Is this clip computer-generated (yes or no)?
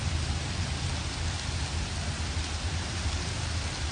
no